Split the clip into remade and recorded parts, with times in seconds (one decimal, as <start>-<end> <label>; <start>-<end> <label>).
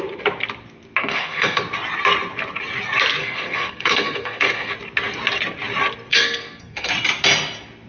0.0-1.0 recorded; 1.0-1.6 remade; 1.6-3.2 recorded; 3.2-4.7 remade; 4.7-6.1 recorded; 6.1-6.9 remade; 6.9-7.9 recorded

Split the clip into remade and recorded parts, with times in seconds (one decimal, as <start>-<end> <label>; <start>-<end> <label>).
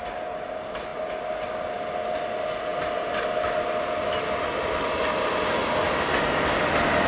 0.0-7.1 recorded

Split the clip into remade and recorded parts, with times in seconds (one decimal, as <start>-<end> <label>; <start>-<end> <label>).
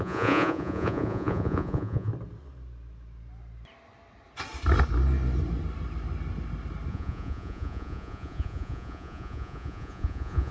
0.0-2.1 remade; 2.1-6.9 recorded; 6.9-10.5 remade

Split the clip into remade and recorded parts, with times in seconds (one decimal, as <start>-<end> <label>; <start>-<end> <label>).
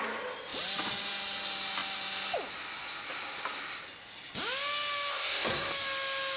0.0-5.1 recorded; 5.1-5.7 remade; 5.7-6.4 recorded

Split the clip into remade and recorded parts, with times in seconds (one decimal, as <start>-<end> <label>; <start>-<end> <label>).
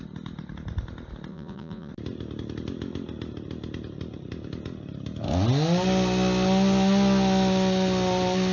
0.0-1.3 recorded; 1.3-1.9 remade; 1.9-8.5 recorded